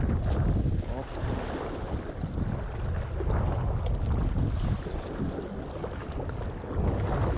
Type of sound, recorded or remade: recorded